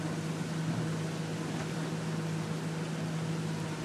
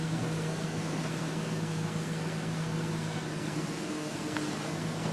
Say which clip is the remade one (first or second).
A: second